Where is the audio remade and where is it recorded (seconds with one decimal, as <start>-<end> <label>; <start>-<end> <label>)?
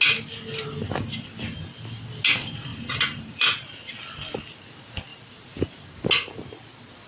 0.0-2.7 recorded; 2.7-3.9 remade; 3.9-5.1 recorded; 5.1-5.7 remade; 5.7-7.1 recorded